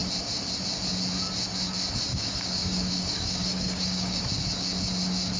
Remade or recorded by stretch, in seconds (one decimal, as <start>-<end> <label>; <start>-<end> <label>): 0.0-2.1 recorded; 2.1-4.2 remade; 4.2-5.4 recorded